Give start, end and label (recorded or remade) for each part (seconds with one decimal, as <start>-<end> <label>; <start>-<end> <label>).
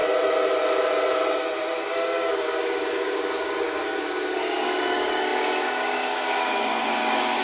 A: 0.0-1.9 recorded; 1.9-7.4 remade